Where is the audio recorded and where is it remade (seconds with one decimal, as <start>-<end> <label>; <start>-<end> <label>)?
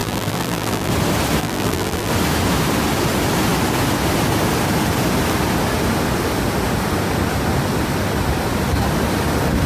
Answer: 0.0-0.9 remade; 0.9-1.4 recorded; 1.4-2.1 remade; 2.1-9.7 recorded